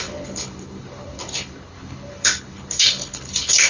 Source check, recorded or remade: remade